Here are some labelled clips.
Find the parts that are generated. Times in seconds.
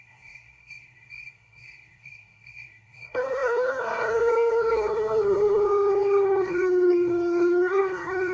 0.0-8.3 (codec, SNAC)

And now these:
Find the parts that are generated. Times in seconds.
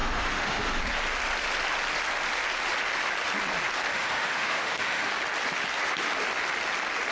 0.0-0.8 (autoencoder, DAC-VAE); 3.9-5.1